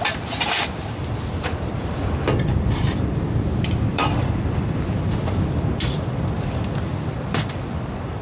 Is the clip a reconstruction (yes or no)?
yes